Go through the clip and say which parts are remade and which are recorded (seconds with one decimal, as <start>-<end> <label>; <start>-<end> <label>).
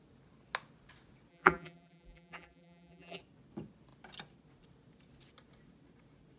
0.0-1.3 recorded; 1.3-3.2 remade; 3.2-6.4 recorded